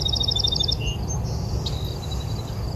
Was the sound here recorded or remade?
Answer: recorded